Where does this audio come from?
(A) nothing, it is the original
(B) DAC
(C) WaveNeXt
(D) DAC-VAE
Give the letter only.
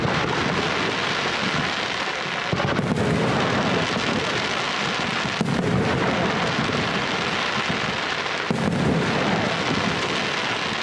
A